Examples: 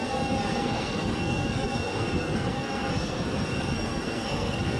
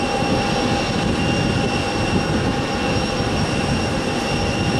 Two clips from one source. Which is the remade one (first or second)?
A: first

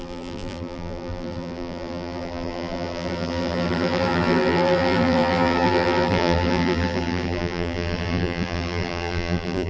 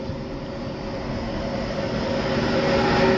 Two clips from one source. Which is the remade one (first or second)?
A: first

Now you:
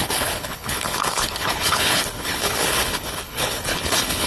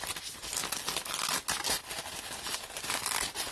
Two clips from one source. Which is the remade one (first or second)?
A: first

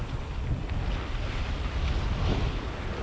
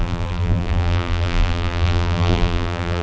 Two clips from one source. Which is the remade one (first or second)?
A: second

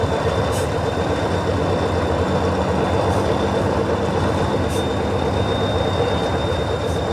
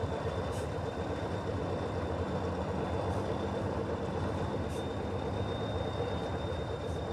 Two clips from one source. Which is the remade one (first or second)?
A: second